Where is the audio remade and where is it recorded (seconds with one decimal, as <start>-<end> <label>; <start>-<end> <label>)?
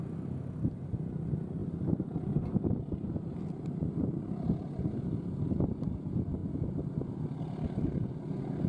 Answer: 0.0-8.7 recorded